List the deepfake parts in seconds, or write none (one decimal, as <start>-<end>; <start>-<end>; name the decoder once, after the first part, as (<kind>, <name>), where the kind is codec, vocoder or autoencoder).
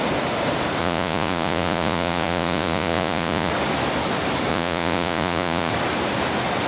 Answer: 0.8-3.5 (vocoder, Vocos); 4.5-5.7